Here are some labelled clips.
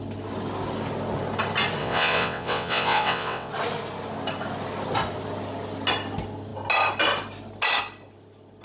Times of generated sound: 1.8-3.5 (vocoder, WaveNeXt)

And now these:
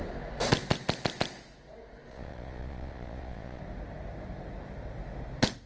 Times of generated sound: 2.1-3.6 (vocoder, Vocos)

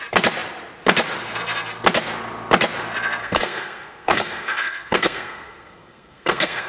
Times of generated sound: 3.2-6.7 (codec, SNAC)

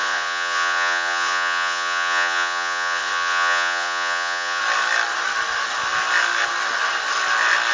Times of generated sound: 0.0-4.6 (vocoder, Vocos)

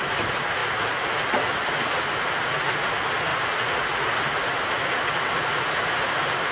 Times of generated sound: 0.0-0.6 (vocoder, BigVGAN v2); 1.3-3.3; 5.3-6.5

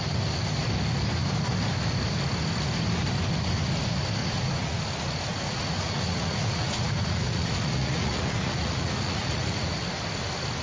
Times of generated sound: 4.2-4.8 (vocoder, Vocos); 5.3-9.8